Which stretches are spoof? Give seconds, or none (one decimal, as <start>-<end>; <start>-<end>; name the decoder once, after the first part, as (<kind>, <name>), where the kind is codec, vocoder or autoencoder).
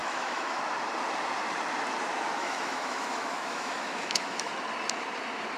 0.0-0.6 (autoencoder, DAC-VAE); 2.4-4.5